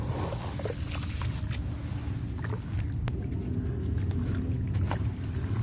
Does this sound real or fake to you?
real